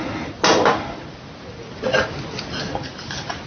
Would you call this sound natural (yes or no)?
yes